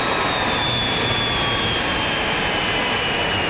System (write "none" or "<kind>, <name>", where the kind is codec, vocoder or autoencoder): none